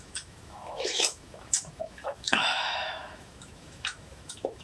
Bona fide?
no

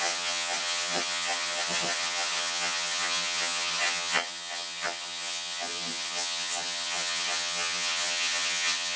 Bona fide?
no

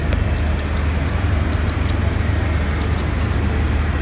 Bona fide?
yes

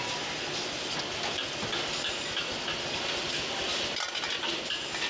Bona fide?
yes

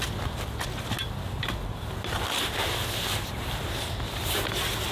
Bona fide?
yes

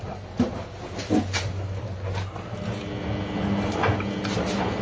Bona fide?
yes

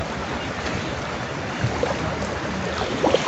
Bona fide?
yes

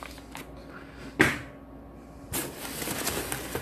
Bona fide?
yes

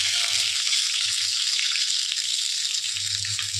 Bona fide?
no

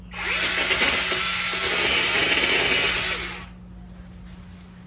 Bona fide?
yes